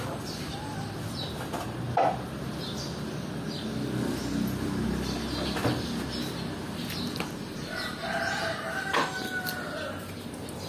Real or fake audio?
real